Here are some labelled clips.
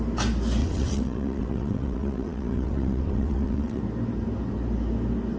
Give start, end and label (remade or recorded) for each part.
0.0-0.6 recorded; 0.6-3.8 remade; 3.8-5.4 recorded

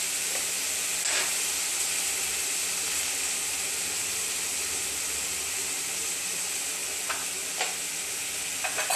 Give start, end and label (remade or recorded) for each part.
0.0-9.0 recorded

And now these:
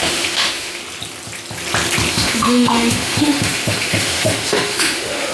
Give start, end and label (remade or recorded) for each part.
0.0-0.8 remade; 0.8-2.1 recorded; 2.1-5.3 remade

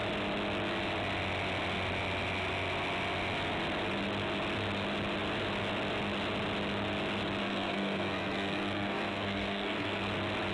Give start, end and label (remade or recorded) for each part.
0.0-7.4 recorded; 7.4-10.0 remade; 10.0-10.5 recorded

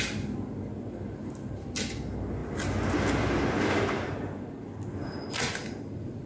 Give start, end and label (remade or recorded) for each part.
0.0-6.3 recorded

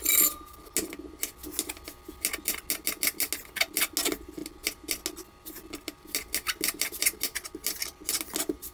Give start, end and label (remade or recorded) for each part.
0.0-8.7 recorded